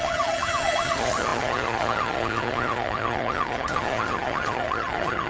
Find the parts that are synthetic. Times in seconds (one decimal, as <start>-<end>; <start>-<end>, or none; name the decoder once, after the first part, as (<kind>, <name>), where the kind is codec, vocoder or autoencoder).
0.0-5.3 (vocoder, HiFi-GAN)